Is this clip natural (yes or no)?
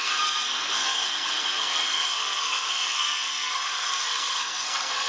no